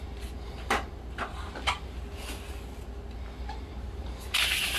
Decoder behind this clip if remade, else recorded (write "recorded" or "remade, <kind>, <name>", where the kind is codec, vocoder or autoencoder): recorded